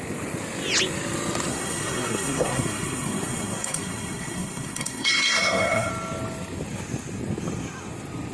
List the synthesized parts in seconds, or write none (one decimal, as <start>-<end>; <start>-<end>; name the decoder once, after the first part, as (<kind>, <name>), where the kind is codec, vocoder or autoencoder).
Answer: 1.5-5.9 (codec, SNAC)